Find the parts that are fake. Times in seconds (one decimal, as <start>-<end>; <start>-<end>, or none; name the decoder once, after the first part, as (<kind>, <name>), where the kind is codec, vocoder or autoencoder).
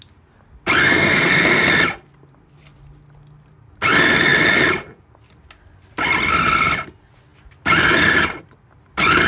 0.8-1.3 (codec, SNAC)